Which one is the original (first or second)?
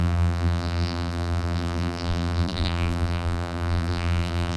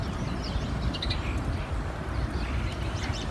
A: second